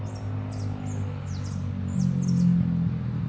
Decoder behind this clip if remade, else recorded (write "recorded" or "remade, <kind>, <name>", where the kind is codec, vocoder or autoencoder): recorded